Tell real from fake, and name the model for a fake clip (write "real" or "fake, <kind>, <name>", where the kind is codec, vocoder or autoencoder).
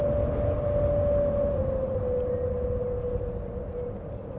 real